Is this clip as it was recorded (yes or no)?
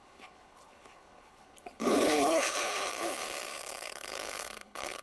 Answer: no